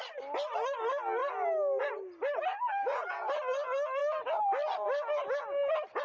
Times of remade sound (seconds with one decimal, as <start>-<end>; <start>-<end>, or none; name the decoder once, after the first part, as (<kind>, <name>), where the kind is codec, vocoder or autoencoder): 2.8-3.4 (vocoder, Vocos)